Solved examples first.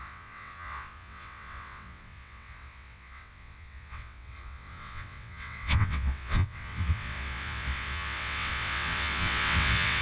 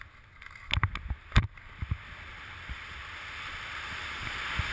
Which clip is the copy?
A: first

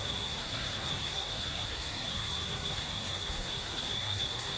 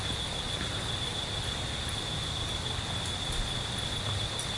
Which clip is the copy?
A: first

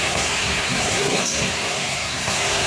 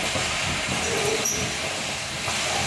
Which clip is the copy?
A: first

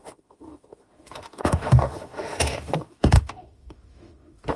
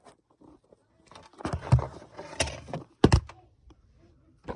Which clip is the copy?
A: first